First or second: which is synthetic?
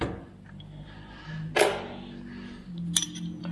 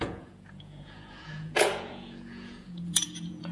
second